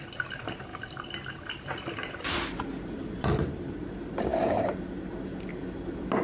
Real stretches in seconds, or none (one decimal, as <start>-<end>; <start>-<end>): 0.7-3.4